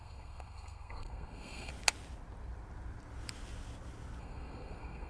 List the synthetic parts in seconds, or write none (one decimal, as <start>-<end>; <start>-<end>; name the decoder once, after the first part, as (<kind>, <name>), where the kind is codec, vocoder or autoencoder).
0.0-1.7 (codec, SNAC); 4.2-5.1